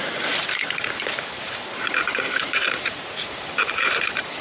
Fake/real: fake